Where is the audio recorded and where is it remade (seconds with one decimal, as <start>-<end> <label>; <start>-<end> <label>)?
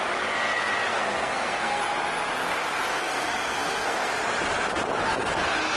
0.0-0.9 recorded; 0.9-1.8 remade; 1.8-2.9 recorded; 2.9-4.1 remade; 4.1-5.8 recorded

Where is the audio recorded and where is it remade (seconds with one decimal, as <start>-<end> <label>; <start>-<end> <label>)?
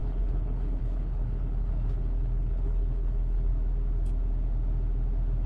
0.0-3.5 remade; 3.5-5.5 recorded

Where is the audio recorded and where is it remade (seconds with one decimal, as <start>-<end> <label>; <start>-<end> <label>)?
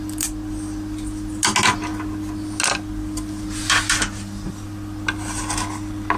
0.0-6.2 recorded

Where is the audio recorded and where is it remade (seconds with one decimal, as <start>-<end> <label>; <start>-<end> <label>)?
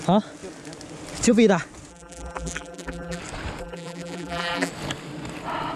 0.0-1.9 recorded; 1.9-3.2 remade; 3.2-3.6 recorded; 3.6-4.7 remade; 4.7-5.8 recorded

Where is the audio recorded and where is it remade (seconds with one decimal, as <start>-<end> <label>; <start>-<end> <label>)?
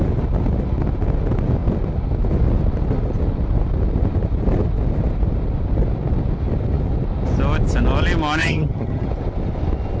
0.0-8.4 recorded; 8.4-9.1 remade; 9.1-10.0 recorded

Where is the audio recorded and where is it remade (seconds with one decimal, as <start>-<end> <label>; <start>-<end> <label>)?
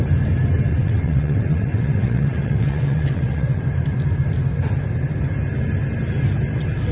0.0-0.7 recorded; 0.7-3.6 remade; 3.6-6.9 recorded